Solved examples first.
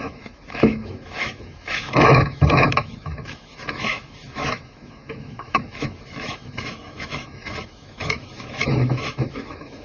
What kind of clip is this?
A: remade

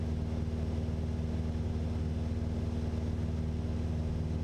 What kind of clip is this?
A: recorded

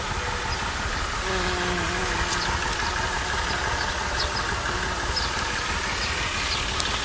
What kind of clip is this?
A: recorded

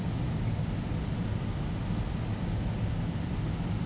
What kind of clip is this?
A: recorded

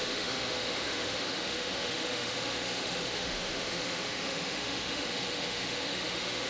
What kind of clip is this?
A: remade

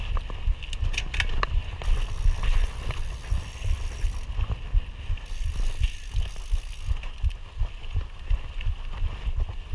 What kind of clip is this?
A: recorded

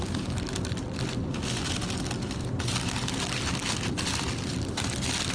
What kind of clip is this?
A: recorded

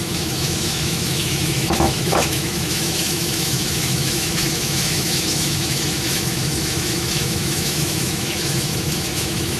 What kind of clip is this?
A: remade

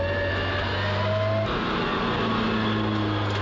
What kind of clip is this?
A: recorded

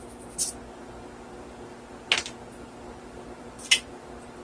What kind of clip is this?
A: recorded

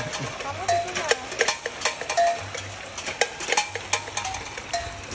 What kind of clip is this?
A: recorded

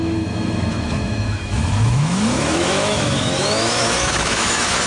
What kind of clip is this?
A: remade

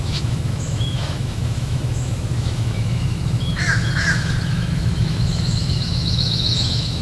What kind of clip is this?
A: remade